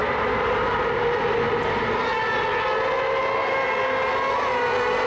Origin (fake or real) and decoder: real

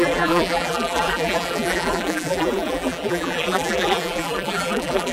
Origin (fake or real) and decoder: fake, vocoder, BigVGAN v2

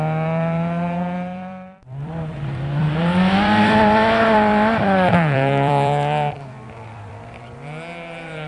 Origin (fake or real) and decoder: fake, vocoder, BigVGAN v2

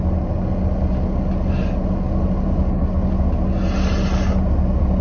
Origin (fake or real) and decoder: real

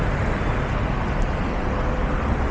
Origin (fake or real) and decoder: real